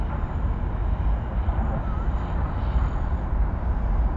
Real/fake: real